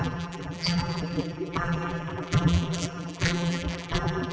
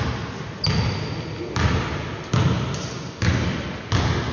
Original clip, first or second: second